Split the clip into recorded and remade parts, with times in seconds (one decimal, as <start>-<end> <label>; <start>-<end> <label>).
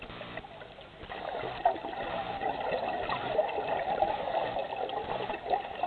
0.0-4.6 recorded; 4.6-5.4 remade; 5.4-5.9 recorded